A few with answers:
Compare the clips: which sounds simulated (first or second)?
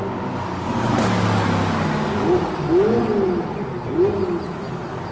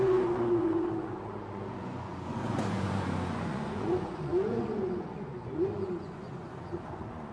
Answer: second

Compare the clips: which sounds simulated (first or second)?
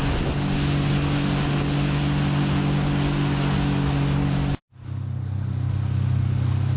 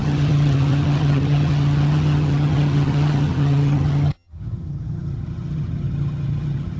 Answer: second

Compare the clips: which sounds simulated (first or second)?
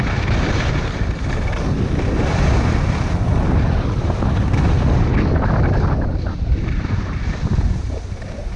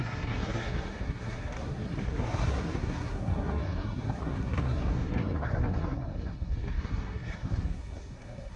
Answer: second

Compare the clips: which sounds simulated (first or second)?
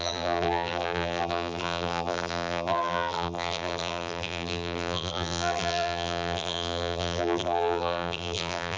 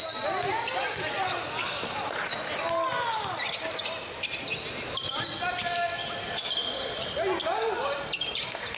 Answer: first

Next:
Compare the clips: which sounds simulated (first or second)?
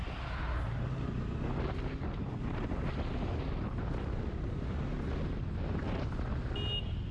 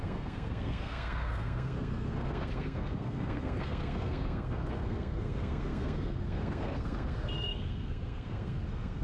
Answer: second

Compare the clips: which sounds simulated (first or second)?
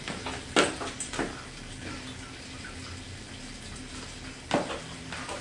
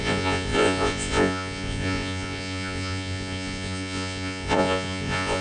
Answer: second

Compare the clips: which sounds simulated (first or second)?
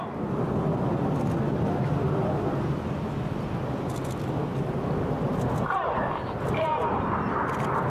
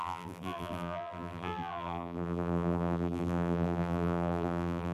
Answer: second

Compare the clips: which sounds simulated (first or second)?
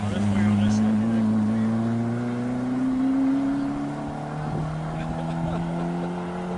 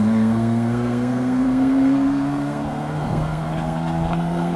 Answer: second